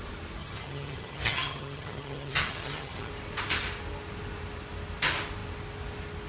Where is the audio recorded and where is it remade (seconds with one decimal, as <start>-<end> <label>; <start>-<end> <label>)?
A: 0.0-0.4 recorded; 0.4-3.1 remade; 3.1-6.3 recorded